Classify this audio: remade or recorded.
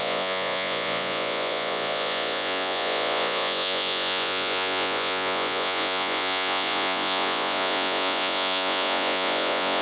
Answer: remade